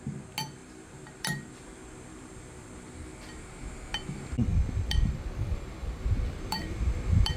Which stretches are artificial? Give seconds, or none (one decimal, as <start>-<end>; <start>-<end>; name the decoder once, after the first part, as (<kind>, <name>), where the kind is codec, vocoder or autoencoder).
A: 0.6-2.7 (vocoder, BigVGAN v2); 4.5-7.4